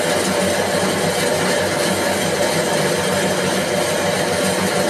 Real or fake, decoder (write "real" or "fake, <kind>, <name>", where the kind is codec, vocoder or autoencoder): real